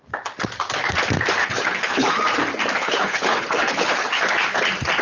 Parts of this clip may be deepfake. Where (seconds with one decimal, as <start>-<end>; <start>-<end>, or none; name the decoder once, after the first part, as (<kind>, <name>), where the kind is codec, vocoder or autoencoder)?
1.4-2.1 (codec, HILCodec); 2.8-4.2